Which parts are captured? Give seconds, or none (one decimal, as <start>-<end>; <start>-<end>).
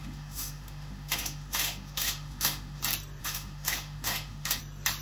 2.8-3.2; 4.6-5.0